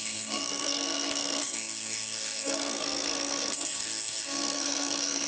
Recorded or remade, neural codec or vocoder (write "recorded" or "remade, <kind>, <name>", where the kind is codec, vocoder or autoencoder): remade, codec, SNAC